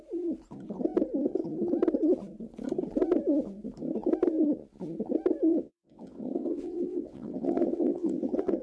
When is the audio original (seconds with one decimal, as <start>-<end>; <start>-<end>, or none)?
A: 0.0-5.5